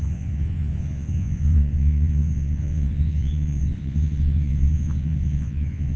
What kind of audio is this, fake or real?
fake